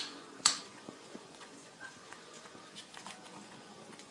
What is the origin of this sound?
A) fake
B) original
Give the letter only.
A